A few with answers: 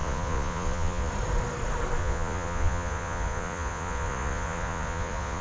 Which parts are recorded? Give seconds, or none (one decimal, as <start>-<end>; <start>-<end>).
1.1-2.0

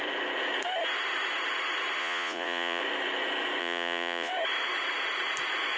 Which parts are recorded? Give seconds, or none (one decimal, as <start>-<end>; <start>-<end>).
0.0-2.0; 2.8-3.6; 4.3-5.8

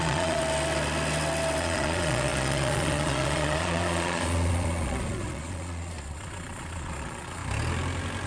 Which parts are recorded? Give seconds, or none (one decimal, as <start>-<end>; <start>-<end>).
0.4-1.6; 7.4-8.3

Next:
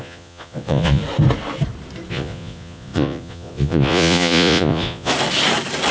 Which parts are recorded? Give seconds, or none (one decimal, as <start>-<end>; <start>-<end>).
1.0-2.1; 5.1-5.9

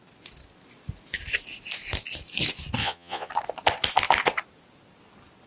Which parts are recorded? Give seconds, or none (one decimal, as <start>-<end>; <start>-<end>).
0.0-2.8; 3.3-5.5

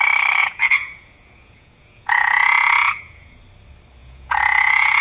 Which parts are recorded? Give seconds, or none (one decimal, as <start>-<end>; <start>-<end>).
0.0-0.4; 3.4-4.0

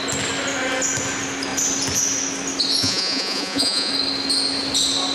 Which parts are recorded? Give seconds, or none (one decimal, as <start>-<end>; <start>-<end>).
0.0-2.8; 3.9-5.1

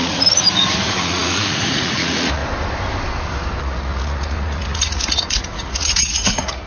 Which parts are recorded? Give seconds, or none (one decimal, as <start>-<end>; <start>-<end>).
2.4-3.6